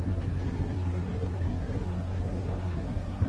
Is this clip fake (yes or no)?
yes